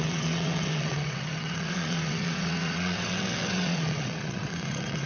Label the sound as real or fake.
fake